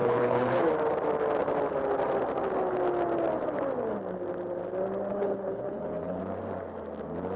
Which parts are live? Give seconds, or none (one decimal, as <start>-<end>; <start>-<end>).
0.7-5.1; 6.2-7.4

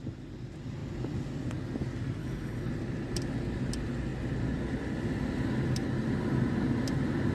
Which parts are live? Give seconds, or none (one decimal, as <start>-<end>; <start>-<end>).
0.0-2.2; 2.7-7.3

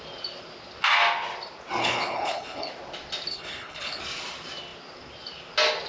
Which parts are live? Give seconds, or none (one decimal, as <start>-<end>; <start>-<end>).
0.0-1.8; 2.7-3.3; 4.0-5.9

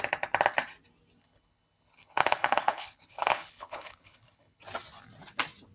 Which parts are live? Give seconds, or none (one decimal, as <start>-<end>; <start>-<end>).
0.0-1.2; 4.6-5.7

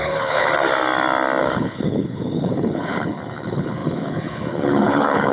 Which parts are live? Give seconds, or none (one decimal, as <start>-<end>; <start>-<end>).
0.5-1.4

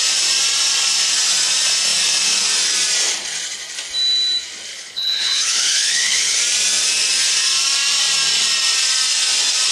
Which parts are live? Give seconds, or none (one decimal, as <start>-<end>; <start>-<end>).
0.0-4.7; 6.4-9.7

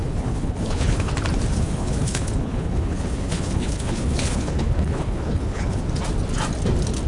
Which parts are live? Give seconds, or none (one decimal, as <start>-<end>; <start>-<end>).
1.1-1.5; 5.8-7.1